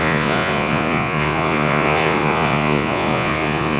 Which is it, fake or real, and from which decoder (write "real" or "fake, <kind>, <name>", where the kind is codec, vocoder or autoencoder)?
fake, vocoder, Vocos